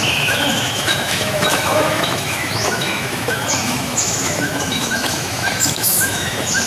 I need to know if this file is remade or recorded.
remade